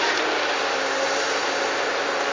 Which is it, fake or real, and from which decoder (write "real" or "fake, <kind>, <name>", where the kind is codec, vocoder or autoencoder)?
real